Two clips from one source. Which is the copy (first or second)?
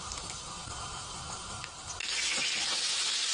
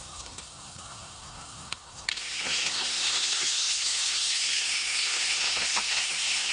second